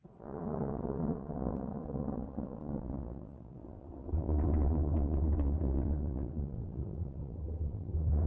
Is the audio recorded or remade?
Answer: remade